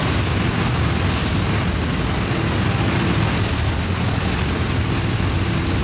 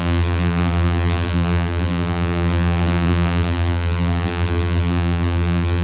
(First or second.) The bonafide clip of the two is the first